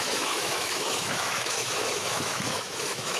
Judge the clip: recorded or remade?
remade